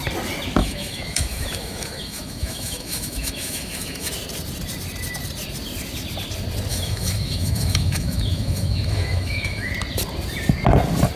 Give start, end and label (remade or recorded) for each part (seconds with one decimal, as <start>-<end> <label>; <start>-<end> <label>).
0.0-0.6 recorded; 0.6-4.1 remade; 4.1-6.7 recorded; 6.7-9.7 remade; 9.7-11.2 recorded